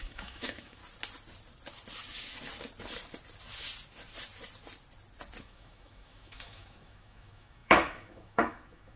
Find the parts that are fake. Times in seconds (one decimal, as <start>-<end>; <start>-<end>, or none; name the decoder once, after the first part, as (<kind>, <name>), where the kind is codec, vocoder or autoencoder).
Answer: 0.0-0.8 (autoencoder, DAC-VAE); 5.4-9.0